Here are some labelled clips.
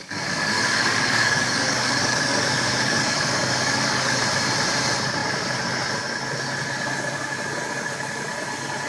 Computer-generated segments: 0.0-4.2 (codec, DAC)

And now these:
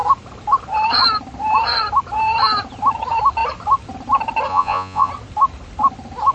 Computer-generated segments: 4.5-5.1 (vocoder, Vocos)

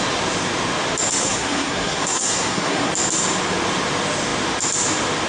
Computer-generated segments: 1.2-2.9 (codec, SNAC)

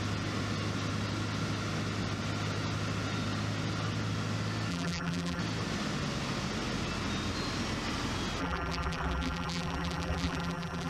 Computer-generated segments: 4.7-5.4 (vocoder, BigVGAN v2); 8.4-10.9

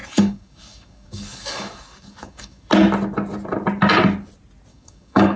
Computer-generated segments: 0.0-2.7 (codec, DAC); 4.7-5.4